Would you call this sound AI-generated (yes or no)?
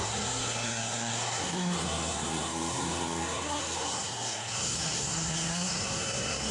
yes